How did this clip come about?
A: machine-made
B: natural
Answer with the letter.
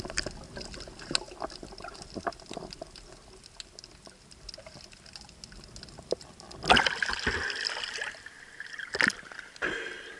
B